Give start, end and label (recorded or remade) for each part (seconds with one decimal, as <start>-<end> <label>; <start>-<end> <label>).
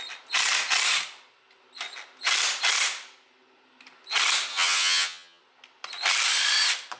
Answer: 0.0-4.5 recorded; 4.5-5.4 remade; 5.4-7.0 recorded